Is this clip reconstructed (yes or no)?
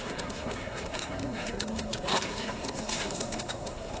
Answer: yes